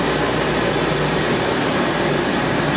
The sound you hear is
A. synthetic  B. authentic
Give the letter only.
B